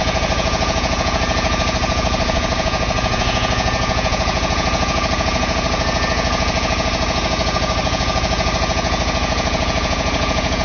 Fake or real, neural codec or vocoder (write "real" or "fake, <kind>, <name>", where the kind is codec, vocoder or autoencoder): fake, vocoder, Vocos